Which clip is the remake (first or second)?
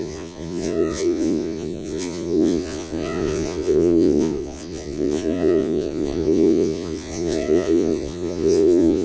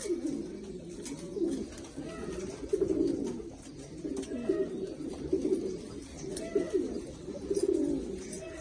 first